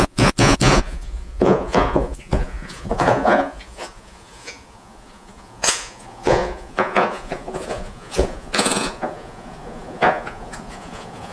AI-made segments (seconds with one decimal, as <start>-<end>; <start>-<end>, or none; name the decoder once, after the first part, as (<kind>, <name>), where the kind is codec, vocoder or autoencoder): 0.0-11.3 (vocoder, Vocos)